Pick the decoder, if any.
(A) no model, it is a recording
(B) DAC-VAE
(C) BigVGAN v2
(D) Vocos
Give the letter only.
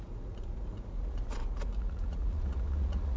D